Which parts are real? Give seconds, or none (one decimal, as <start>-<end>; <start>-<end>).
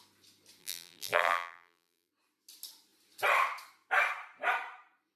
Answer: 0.0-0.6; 2.1-5.2